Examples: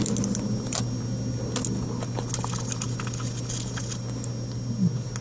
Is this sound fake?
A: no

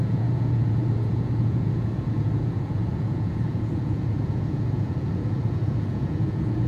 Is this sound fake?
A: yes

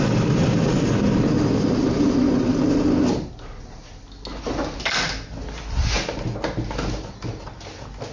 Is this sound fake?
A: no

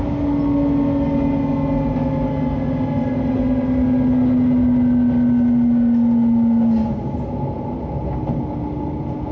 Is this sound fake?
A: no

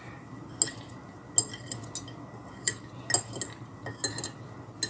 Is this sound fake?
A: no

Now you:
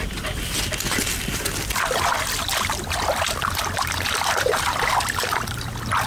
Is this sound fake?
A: no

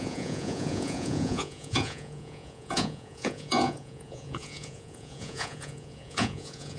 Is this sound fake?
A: yes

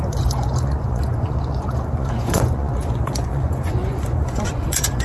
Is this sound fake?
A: yes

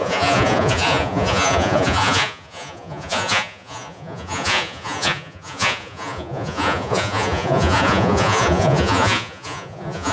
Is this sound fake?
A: yes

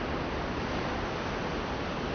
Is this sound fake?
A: no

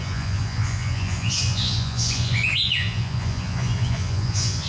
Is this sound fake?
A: yes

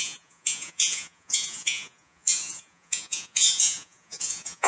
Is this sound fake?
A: yes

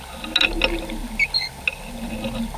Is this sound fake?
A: no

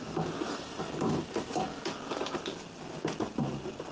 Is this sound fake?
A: no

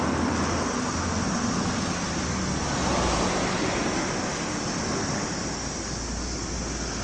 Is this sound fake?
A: no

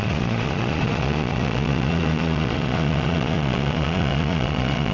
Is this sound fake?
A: yes